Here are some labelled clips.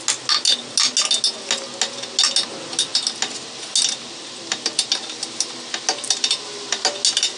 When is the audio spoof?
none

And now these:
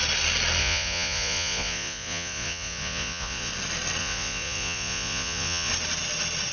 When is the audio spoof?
0.6-3.5 (vocoder, Vocos); 4.0-5.7

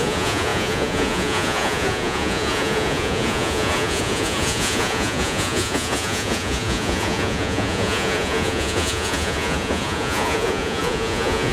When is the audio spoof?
0.0-11.5 (vocoder, Vocos)

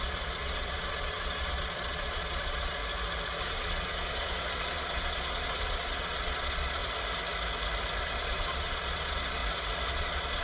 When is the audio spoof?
0.0-2.8 (vocoder, Vocos); 3.4-6.8; 8.0-9.4; 9.9-10.4

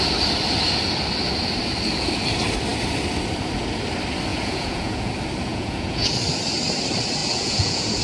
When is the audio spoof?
4.3-5.1 (vocoder, Vocos); 5.5-6.1; 7.2-8.0

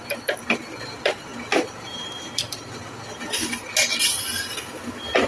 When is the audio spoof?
none

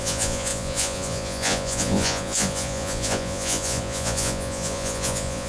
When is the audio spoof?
0.0-5.5 (vocoder, Vocos)